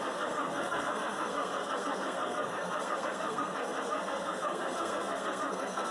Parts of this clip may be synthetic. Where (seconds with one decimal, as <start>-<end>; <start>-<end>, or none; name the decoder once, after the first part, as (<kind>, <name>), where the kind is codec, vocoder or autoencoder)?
0.0-5.9 (codec, SNAC)